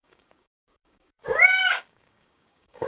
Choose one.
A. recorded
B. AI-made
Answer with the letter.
B